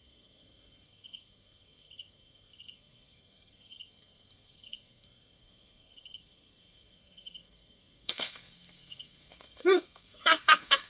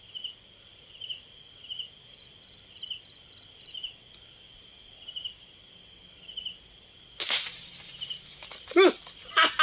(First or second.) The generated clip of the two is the first